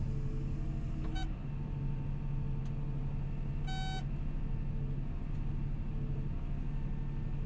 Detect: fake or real real